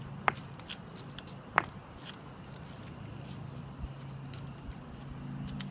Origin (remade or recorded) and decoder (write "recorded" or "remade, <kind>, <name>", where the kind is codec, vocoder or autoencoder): recorded